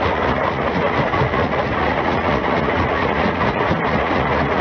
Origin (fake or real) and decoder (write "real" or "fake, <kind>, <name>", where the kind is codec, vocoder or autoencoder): fake, vocoder, Vocos